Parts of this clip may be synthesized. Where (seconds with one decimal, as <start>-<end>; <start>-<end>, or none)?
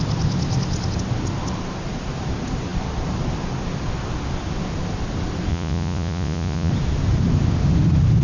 5.5-6.7